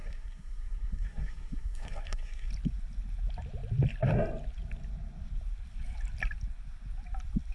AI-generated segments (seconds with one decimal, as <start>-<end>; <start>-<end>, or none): 0.0-2.5